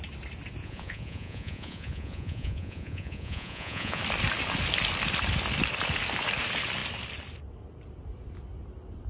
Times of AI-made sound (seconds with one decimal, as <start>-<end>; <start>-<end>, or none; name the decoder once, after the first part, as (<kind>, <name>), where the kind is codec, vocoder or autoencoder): 0.6-4.0 (vocoder, Vocos)